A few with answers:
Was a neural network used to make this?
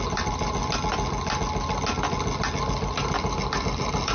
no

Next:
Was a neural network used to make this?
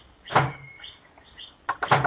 no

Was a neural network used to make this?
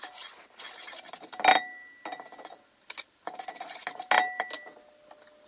no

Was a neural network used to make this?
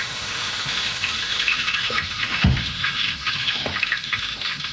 yes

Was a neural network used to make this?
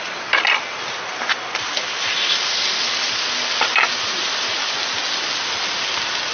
no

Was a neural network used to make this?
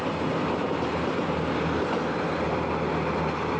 no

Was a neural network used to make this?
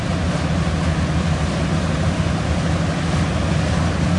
no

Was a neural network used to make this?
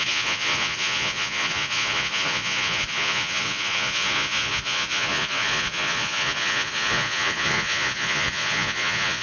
yes